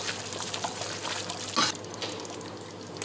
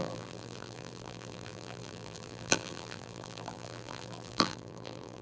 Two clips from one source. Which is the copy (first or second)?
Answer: second